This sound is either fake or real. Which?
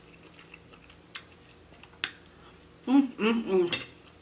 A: real